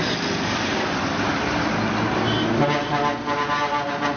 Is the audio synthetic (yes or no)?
no